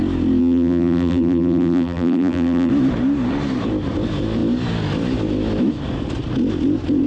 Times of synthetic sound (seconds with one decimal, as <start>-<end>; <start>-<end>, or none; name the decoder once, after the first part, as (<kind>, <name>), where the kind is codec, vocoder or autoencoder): 0.4-2.7 (vocoder, BigVGAN v2)